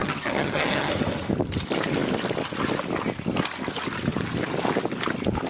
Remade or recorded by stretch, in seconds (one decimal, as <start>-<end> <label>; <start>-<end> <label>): 0.0-0.9 remade; 0.9-5.5 recorded